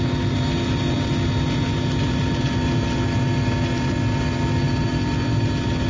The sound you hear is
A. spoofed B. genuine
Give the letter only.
B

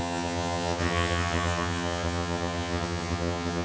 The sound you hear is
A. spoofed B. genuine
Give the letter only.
A